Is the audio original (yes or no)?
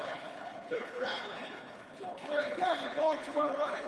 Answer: no